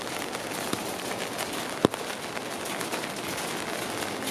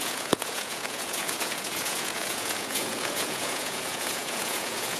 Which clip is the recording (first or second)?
first